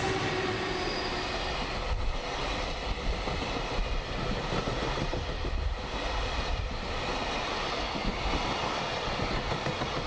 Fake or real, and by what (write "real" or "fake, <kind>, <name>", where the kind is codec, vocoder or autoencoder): real